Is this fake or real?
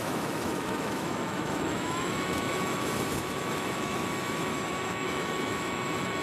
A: fake